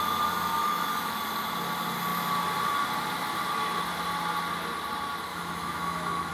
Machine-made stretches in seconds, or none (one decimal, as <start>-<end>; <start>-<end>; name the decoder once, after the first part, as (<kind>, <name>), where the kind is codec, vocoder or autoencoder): 0.6-1.2 (autoencoder, DAC-VAE); 5.3-6.3